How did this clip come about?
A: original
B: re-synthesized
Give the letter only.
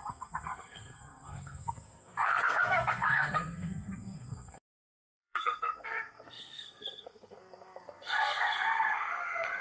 B